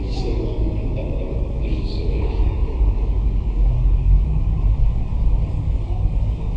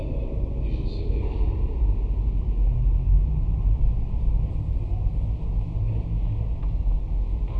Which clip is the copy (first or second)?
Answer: first